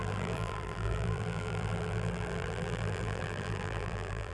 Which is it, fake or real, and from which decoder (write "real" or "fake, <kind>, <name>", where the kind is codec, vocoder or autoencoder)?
fake, vocoder, BigVGAN v2